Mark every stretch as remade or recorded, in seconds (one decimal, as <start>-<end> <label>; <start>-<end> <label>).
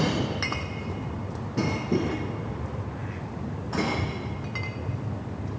0.0-5.6 recorded